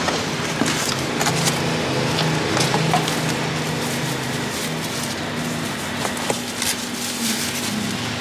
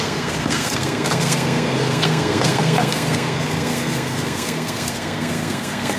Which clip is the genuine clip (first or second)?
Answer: first